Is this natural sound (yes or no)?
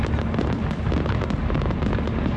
yes